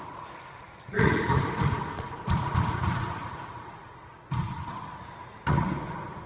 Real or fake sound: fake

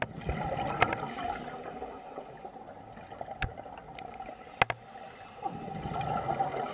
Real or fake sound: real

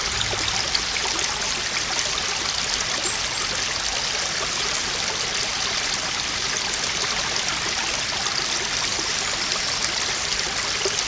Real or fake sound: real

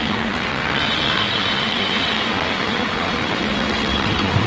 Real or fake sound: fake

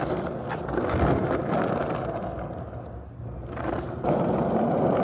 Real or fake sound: real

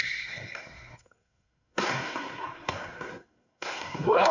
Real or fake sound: fake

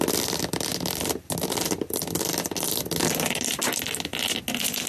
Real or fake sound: real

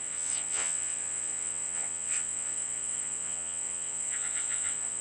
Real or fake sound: fake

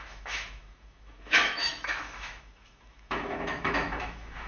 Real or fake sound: fake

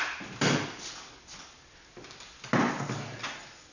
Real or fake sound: real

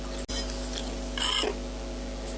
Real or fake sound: real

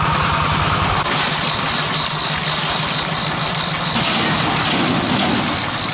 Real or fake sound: real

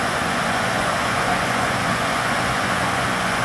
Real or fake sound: fake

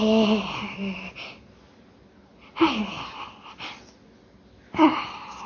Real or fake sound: real